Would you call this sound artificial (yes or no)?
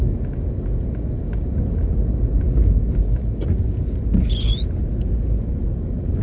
no